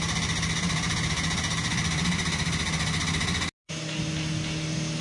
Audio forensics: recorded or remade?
recorded